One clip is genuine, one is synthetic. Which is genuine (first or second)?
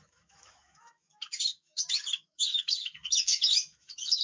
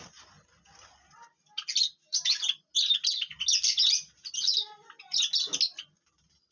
second